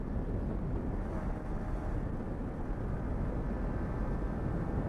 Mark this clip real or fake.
real